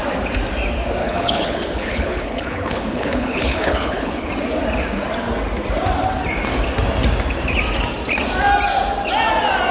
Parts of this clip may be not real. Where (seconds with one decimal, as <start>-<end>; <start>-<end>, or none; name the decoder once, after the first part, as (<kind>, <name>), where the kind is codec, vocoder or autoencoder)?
1.0-4.3 (codec, HILCodec)